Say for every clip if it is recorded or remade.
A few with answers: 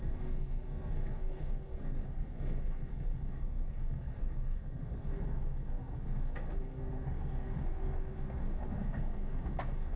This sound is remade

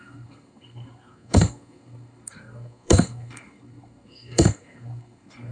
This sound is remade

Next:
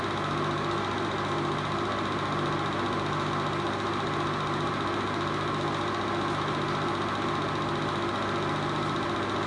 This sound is recorded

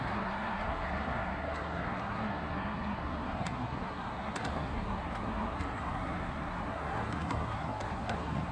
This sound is remade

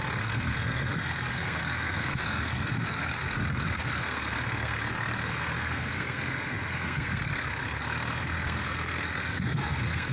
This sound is remade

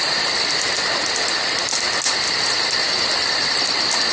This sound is recorded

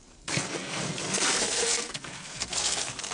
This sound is remade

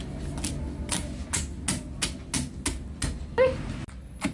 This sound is recorded